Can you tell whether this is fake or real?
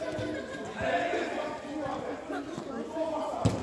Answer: real